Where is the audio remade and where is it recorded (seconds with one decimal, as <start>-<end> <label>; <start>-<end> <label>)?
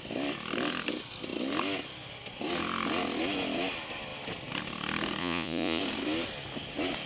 0.0-5.2 recorded; 5.2-5.8 remade; 5.8-7.1 recorded